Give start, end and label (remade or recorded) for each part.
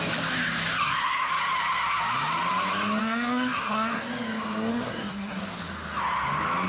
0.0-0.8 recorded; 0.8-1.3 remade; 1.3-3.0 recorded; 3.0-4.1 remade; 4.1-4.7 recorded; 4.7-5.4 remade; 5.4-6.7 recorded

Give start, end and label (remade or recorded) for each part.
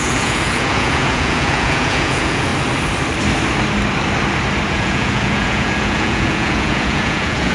0.0-2.5 remade; 2.5-4.7 recorded; 4.7-7.5 remade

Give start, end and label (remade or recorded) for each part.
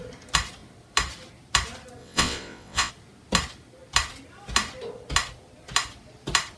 0.0-2.0 recorded; 2.0-2.9 remade; 2.9-6.6 recorded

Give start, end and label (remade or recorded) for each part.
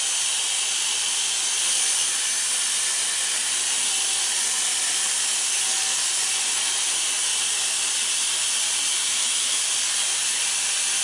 0.0-9.0 recorded; 9.0-9.6 remade; 9.6-11.0 recorded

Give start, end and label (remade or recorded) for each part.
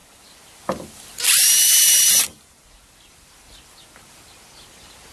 0.0-5.1 recorded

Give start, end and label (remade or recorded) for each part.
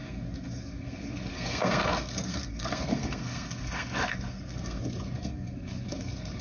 0.0-6.4 remade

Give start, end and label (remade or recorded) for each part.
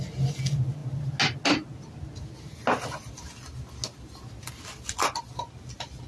0.0-6.1 recorded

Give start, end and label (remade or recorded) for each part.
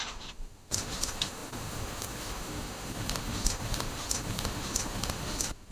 0.0-5.7 remade